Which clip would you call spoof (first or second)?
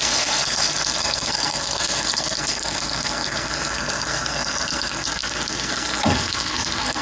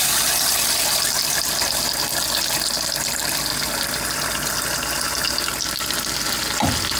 first